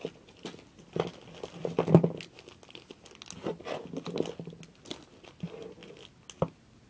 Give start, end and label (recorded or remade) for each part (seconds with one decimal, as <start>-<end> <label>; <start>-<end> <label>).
0.0-6.9 recorded